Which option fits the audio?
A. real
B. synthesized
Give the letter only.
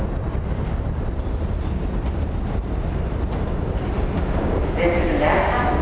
A